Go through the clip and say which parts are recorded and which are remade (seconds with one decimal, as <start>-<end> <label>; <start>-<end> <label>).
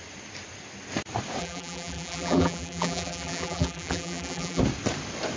0.0-1.4 recorded; 1.4-4.6 remade; 4.6-5.4 recorded